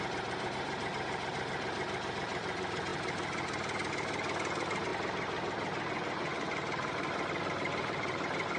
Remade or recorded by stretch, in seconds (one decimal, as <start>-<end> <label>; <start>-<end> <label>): 0.0-4.9 remade; 4.9-7.7 recorded; 7.7-8.6 remade